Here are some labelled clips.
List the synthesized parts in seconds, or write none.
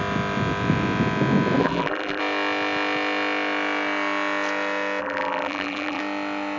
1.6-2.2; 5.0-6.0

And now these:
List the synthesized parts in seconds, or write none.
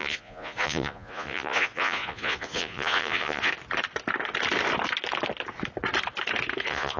0.0-3.5; 6.6-7.0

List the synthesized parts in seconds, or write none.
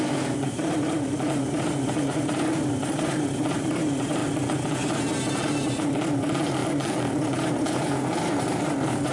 0.0-4.2; 5.5-6.6; 7.2-9.1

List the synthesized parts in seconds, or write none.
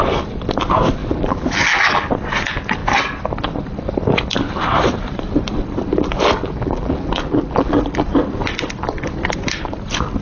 1.0-2.1; 5.9-8.0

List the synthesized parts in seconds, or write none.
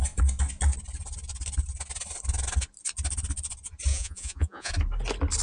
3.9-4.7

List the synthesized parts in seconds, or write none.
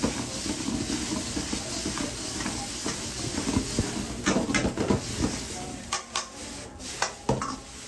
none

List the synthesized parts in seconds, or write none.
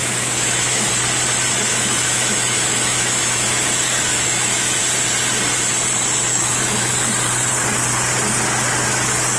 0.0-0.9; 1.7-4.8; 6.3-6.9